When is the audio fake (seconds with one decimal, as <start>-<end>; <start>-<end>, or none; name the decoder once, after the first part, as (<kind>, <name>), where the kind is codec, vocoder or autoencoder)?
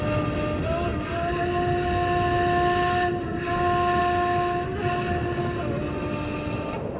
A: 5.4-5.9 (codec, DAC)